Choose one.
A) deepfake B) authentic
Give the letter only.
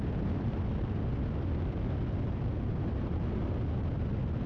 B